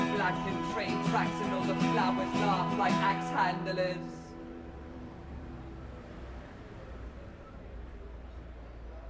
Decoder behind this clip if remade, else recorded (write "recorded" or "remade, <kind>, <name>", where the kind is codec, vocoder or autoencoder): remade, vocoder, BigVGAN v2